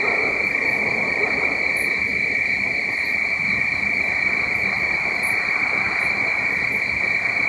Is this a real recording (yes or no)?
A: yes